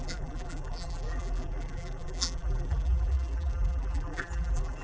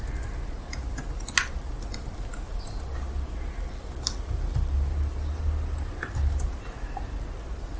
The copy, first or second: first